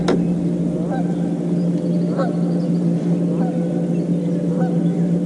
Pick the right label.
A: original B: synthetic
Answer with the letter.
A